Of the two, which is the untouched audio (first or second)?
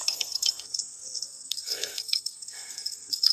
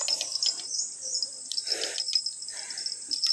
second